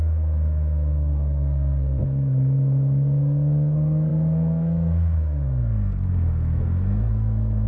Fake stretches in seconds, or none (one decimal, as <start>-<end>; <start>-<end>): 0.0-7.7